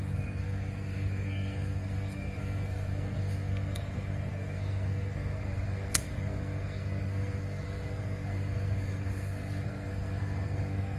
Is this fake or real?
fake